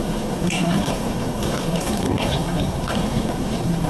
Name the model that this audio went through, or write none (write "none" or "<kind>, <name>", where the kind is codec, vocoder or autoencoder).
codec, SNAC